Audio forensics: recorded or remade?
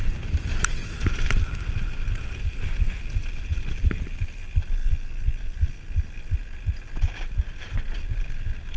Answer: recorded